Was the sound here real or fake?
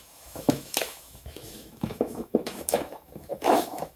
fake